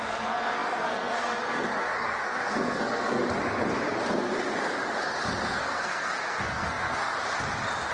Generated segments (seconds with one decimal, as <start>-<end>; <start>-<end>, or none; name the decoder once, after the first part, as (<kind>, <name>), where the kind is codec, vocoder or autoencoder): 0.0-3.2 (codec, SNAC); 5.4-7.1